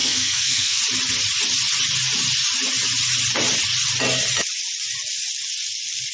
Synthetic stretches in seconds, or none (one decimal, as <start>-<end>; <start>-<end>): 0.0-0.8